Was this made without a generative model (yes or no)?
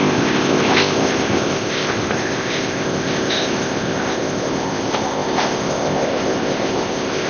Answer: no